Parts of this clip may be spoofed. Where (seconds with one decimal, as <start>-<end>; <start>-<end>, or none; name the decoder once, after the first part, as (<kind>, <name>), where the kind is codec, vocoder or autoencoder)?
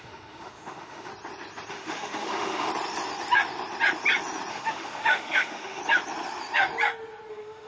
0.0-1.1 (autoencoder, DAC-VAE); 1.7-2.7; 4.5-5.8; 7.3-7.7